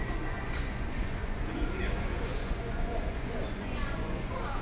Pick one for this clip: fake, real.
fake